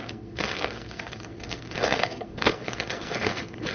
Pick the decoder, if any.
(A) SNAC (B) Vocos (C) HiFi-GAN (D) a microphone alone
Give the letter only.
A